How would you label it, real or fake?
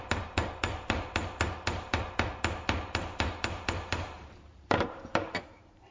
fake